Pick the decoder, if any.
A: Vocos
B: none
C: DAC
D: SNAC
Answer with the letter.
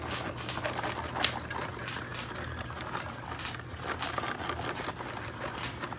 B